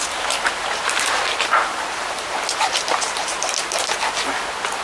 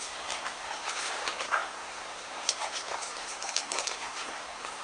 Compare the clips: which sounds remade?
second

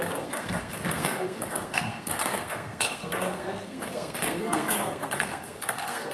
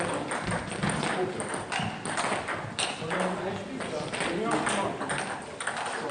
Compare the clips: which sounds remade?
first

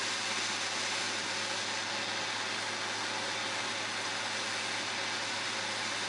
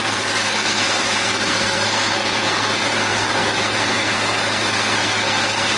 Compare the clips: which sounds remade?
second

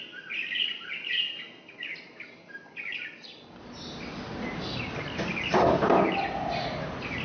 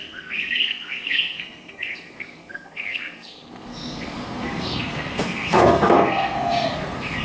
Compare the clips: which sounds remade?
second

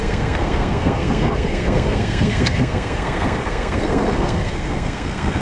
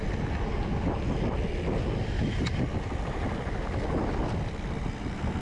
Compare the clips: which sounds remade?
first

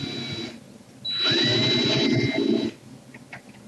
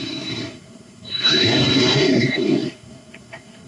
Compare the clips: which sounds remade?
second